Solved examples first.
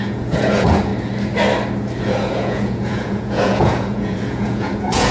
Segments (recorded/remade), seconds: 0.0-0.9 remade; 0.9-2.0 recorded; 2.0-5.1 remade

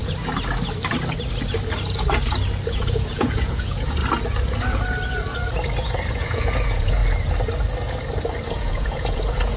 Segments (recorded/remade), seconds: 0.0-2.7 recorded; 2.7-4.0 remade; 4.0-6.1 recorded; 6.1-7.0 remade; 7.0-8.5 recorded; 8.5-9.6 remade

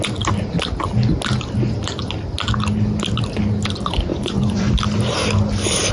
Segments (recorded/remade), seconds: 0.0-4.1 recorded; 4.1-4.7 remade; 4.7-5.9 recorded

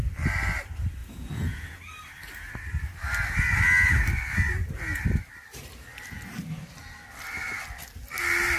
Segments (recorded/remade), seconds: 0.0-1.0 recorded; 1.0-1.8 remade; 1.8-8.6 recorded

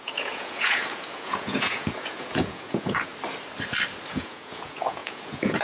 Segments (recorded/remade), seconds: 0.0-3.1 remade; 3.1-4.1 recorded; 4.1-5.6 remade

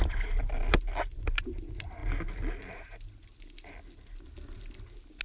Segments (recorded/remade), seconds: 0.0-5.2 recorded

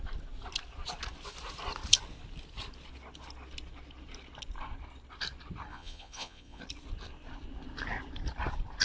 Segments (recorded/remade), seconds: 0.0-5.7 recorded; 5.7-6.6 remade; 6.6-8.8 recorded

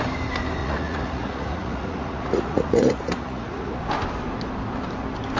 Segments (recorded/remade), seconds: 0.0-0.6 recorded; 0.6-3.8 remade; 3.8-5.4 recorded